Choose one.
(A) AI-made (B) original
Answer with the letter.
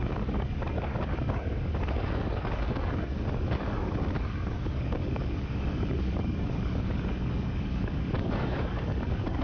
A